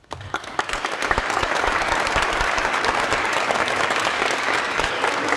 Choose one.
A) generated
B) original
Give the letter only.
A